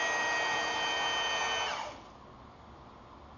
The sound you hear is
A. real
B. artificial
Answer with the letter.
A